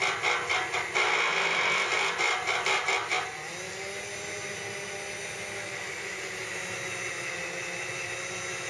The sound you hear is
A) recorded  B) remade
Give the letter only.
A